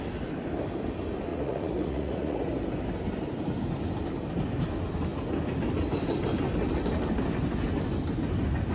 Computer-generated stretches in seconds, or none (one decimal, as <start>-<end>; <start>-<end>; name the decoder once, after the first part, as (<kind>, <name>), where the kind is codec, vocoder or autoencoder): 1.3-2.4 (vocoder, Vocos)